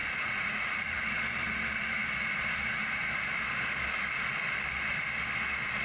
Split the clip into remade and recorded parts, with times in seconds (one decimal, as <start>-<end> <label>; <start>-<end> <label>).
0.0-1.0 remade; 1.0-5.8 recorded